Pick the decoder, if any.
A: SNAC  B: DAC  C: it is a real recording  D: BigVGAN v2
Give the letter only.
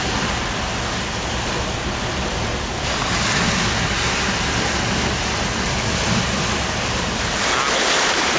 C